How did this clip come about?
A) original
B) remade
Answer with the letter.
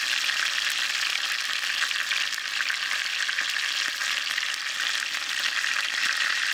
A